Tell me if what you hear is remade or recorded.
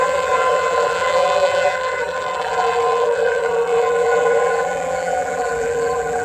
remade